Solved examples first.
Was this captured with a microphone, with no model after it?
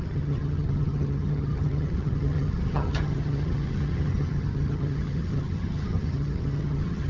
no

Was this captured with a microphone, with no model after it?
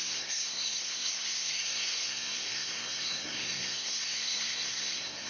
no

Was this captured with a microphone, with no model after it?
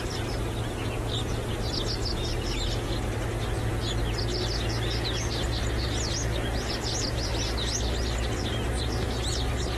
yes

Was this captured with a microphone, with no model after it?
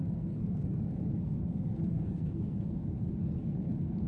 no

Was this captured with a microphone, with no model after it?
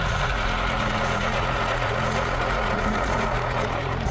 no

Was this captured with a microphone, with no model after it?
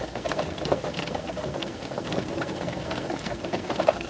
no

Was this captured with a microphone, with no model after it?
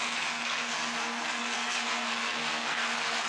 no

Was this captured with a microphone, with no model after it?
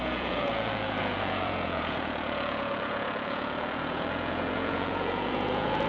no